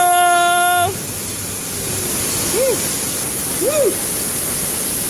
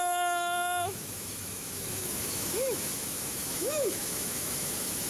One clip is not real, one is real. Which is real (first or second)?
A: first